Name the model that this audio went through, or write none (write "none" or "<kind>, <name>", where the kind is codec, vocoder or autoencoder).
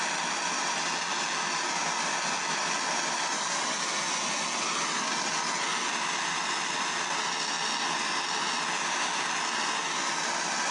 none